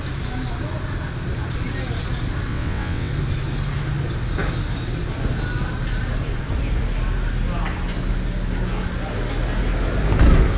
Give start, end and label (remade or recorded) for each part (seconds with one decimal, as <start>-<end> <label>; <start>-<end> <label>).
0.0-2.5 recorded; 2.5-3.1 remade; 3.1-10.6 recorded

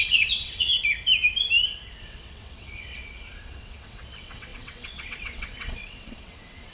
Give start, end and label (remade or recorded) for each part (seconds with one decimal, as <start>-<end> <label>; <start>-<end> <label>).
0.0-0.7 remade; 0.7-2.0 recorded; 2.0-6.7 remade

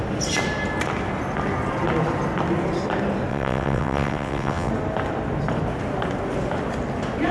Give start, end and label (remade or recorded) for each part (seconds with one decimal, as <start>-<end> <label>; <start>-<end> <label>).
0.0-3.3 recorded; 3.3-4.7 remade; 4.7-7.3 recorded

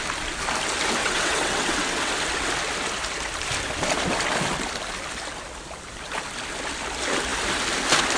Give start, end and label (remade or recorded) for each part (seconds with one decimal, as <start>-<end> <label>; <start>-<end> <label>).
0.0-1.0 recorded; 1.0-2.1 remade; 2.1-8.2 recorded